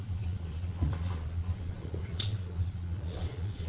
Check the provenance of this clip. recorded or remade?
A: remade